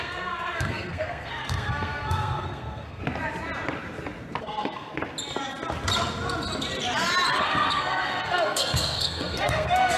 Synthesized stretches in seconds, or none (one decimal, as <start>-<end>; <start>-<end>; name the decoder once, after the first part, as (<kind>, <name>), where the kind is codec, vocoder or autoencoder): 0.0-3.0 (codec, SNAC); 4.4-4.9; 7.4-10.0